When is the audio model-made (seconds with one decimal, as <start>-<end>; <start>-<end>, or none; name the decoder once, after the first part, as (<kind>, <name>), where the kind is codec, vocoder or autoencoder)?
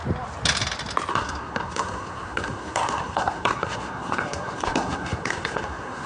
1.1-6.1 (codec, SNAC)